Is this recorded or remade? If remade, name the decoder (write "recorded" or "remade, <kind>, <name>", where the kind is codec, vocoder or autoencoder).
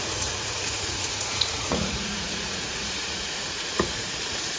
remade, vocoder, Vocos